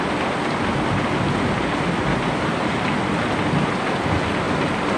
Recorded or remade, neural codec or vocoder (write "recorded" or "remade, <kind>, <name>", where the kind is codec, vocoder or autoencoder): recorded